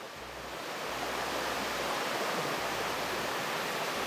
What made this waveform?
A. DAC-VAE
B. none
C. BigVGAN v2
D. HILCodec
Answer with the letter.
B